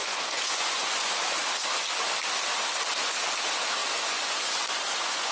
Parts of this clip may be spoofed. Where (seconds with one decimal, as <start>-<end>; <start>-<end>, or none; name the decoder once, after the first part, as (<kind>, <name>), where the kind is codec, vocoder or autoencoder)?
0.0-1.1 (vocoder, Vocos); 3.8-5.3